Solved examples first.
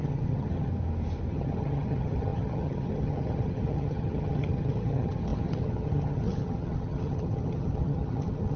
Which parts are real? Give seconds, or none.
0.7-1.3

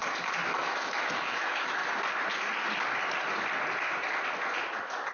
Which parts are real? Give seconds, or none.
0.0-0.6; 1.8-5.1

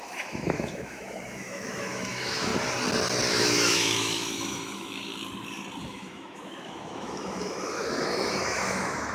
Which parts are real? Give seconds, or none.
2.5-3.3; 5.1-5.8

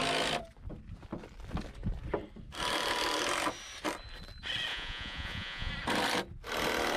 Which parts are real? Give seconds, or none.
0.0-4.7; 5.7-7.0

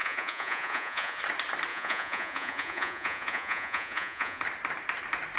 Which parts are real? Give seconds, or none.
1.2-1.7; 4.4-5.4

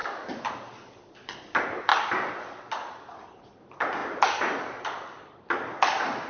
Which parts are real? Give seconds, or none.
1.9-2.9